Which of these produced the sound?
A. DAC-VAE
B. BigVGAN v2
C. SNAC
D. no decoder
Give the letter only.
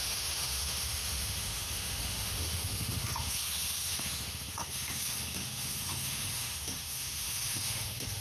A